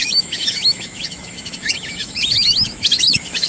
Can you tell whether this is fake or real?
fake